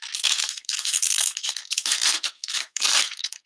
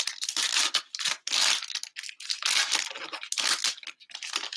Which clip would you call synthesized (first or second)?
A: first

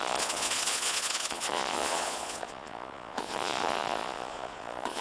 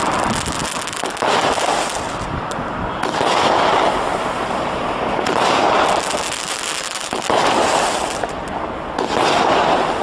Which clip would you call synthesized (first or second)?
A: first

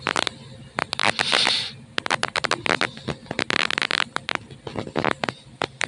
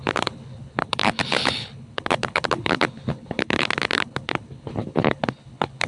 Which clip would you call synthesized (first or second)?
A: second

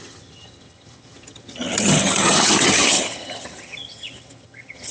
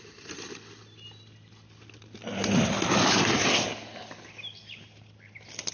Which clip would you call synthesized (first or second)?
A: first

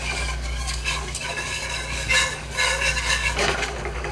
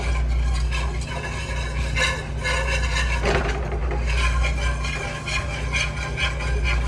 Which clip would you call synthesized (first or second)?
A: first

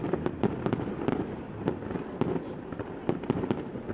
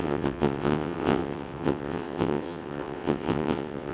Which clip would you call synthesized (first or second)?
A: second